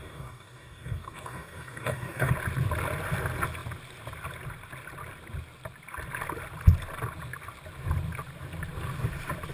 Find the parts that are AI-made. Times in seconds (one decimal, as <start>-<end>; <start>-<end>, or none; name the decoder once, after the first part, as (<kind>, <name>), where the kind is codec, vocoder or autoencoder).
0.0-2.3 (codec, DAC)